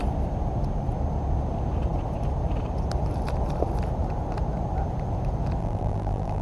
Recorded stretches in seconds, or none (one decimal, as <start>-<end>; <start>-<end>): 0.0-5.6